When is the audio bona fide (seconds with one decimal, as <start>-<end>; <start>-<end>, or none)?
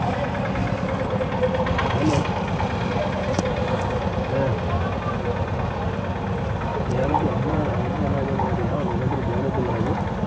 0.0-6.7; 7.7-10.3